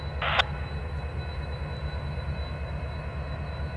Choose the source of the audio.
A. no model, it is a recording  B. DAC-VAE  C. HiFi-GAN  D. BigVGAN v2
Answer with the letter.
A